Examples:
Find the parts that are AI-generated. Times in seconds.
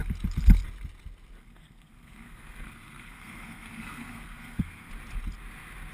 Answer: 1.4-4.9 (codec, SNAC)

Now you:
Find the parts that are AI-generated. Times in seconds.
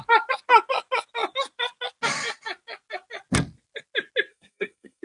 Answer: 4.3-5.0 (codec, SNAC)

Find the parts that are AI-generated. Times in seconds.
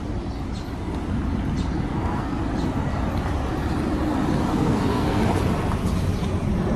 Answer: 1.9-2.4 (codec, SNAC); 4.5-5.2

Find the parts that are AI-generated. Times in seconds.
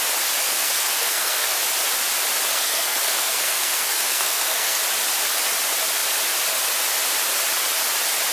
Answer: 0.4-1.6 (codec, SNAC); 2.5-4.8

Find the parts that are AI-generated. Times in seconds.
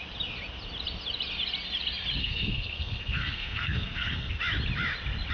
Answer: 2.2-4.4 (codec, SNAC)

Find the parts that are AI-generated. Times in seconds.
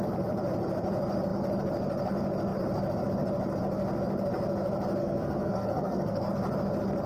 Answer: 5.0-6.3 (codec, SNAC)